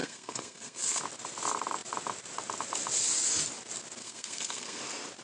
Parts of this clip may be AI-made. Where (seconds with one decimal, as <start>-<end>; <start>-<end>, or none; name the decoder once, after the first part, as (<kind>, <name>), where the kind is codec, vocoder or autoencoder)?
0.0-1.0 (codec, SNAC); 4.0-4.8